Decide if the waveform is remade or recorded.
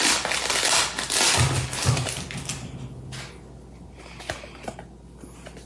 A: recorded